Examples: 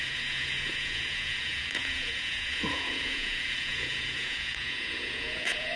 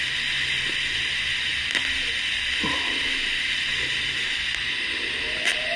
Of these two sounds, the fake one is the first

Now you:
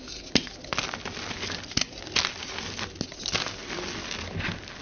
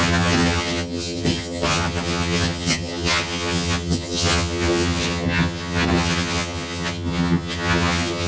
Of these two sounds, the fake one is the second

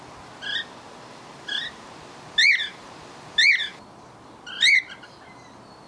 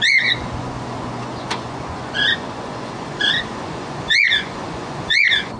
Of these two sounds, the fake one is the second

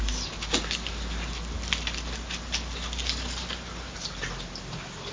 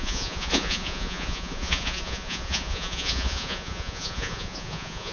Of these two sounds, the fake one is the second